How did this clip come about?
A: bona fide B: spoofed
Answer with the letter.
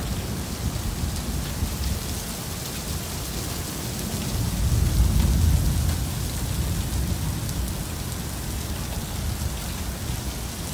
A